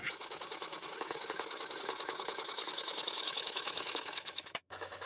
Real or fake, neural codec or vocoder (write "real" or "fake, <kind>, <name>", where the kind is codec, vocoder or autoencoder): fake, autoencoder, DAC-VAE